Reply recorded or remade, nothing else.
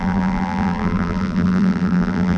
remade